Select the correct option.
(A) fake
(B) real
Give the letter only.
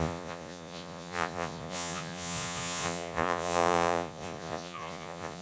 A